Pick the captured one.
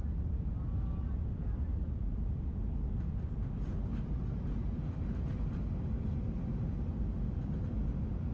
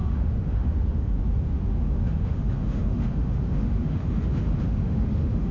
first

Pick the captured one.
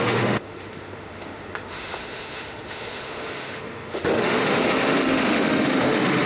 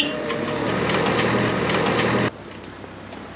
second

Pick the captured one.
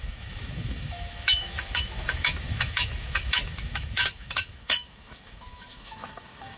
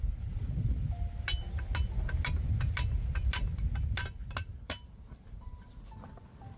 second